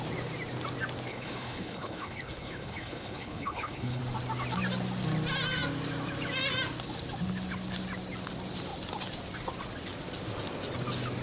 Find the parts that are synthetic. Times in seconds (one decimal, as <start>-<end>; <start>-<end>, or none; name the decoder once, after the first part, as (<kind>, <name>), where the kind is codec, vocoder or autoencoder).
1.1-4.0 (codec, HILCodec)